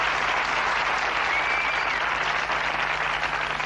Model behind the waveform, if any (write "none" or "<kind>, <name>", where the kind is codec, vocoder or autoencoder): none